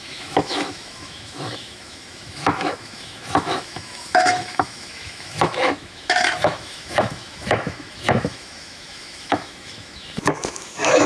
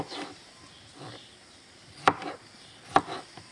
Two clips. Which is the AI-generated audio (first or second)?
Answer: first